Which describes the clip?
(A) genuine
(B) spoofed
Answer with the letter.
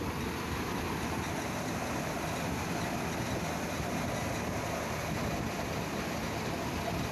A